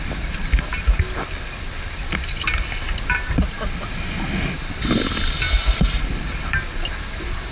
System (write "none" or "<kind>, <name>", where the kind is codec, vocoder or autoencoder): none